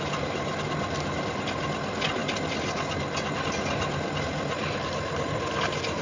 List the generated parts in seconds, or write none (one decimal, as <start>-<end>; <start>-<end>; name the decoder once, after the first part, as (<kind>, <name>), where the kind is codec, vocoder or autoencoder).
none